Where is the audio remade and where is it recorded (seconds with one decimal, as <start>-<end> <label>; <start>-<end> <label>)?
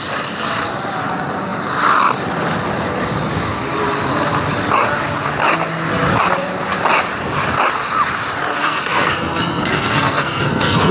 0.0-8.6 recorded; 8.6-10.9 remade